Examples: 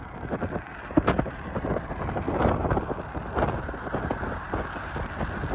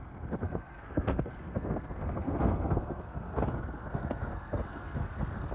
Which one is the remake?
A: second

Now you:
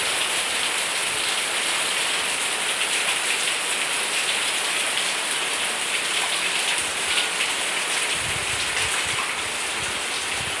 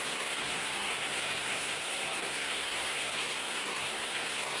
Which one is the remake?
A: second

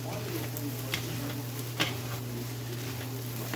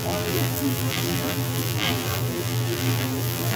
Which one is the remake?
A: second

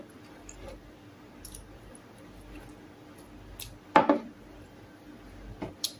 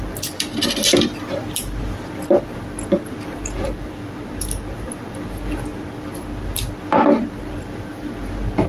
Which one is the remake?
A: second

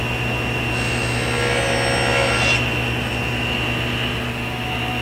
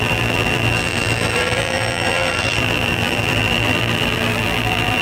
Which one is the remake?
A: second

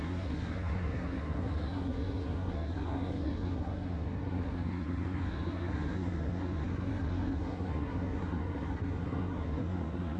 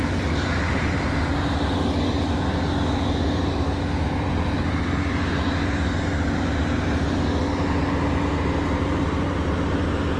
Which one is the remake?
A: first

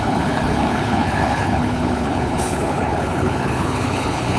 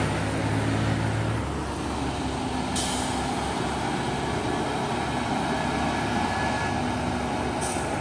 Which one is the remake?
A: first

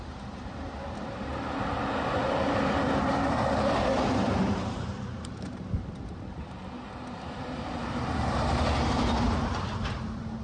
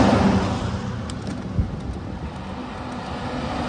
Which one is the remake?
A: first